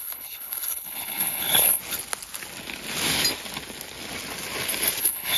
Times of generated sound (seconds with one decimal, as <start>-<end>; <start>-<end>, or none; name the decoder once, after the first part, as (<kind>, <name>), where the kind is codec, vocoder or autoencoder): 0.0-1.8 (codec, HILCodec); 5.0-5.4

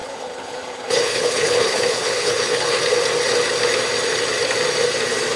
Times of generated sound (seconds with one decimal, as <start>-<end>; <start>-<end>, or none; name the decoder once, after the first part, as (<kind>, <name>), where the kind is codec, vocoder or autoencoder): 0.0-2.8 (codec, HILCodec)

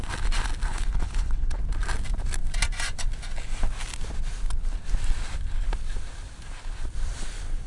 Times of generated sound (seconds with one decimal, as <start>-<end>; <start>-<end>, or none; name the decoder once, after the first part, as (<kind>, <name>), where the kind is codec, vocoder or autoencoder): 0.7-1.6 (codec, HILCodec)